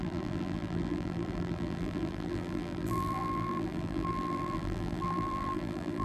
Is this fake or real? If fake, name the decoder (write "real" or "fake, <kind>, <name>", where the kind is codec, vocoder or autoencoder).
fake, vocoder, BigVGAN v2